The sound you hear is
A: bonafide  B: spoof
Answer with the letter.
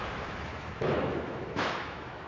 B